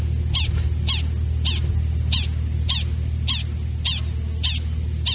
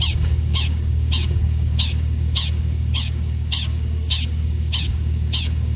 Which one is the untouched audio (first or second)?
first